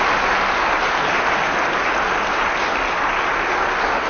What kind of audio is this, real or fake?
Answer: real